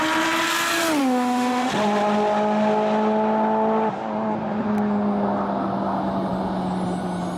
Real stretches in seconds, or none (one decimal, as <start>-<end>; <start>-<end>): 0.0-1.0; 1.7-7.4